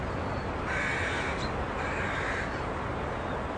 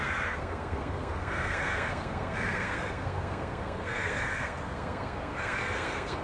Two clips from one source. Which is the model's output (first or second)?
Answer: second